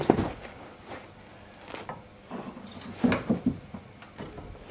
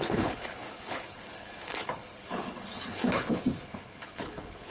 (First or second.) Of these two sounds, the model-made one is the second